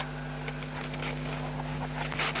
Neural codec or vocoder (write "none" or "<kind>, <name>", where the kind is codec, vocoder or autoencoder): none